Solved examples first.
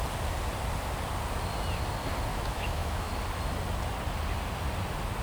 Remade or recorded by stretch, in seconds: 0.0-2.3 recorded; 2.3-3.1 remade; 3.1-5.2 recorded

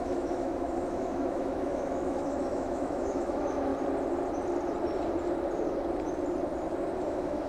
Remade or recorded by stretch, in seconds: 0.0-3.7 remade; 3.7-7.1 recorded; 7.1-7.5 remade

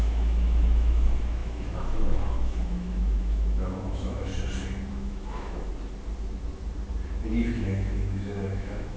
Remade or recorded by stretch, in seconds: 0.0-4.3 remade; 4.3-4.9 recorded; 4.9-5.7 remade; 5.7-7.3 recorded; 7.3-9.0 remade

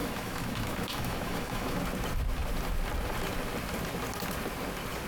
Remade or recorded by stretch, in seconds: 0.0-1.8 remade; 1.8-5.1 recorded

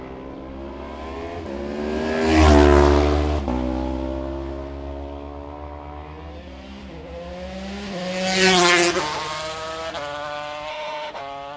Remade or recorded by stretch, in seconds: 0.0-10.7 recorded; 10.7-11.2 remade; 11.2-11.6 recorded

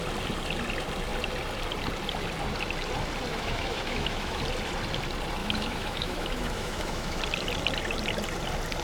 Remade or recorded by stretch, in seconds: 0.0-3.3 recorded; 3.3-4.4 remade; 4.4-5.4 recorded; 5.4-7.2 remade; 7.2-8.8 recorded

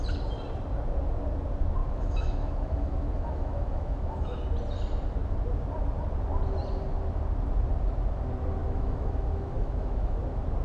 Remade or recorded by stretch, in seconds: 0.0-1.8 recorded; 1.8-4.4 remade; 4.4-8.6 recorded; 8.6-10.2 remade; 10.2-10.6 recorded